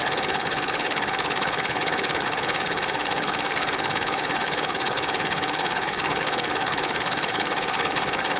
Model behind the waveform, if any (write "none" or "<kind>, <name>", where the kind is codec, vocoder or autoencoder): codec, HILCodec